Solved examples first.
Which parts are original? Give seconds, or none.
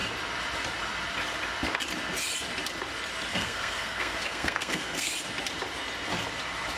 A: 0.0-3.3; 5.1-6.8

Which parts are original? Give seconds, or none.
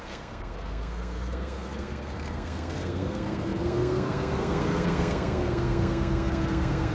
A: none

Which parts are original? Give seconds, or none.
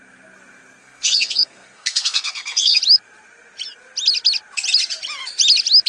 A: 0.0-0.8; 2.8-5.9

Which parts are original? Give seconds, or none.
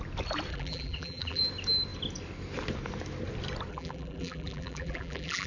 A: 0.0-0.5; 1.4-3.7